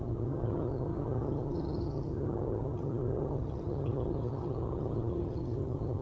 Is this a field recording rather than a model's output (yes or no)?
no